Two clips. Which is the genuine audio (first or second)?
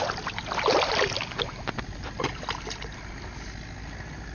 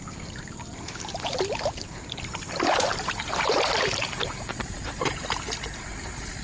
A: first